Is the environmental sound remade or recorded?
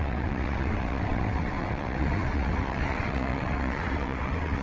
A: remade